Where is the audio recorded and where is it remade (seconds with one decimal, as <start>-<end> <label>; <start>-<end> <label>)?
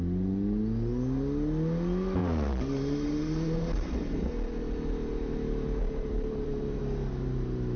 0.0-2.2 recorded; 2.2-4.3 remade; 4.3-5.8 recorded; 5.8-6.8 remade; 6.8-7.8 recorded